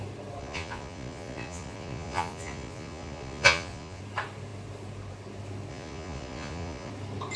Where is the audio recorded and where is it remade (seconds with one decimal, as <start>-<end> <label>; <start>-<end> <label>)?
0.0-0.4 recorded; 0.4-4.0 remade; 4.0-5.7 recorded; 5.7-6.9 remade; 6.9-7.4 recorded